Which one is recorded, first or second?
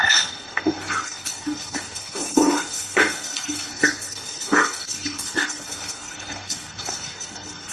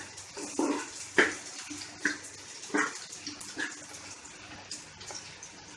second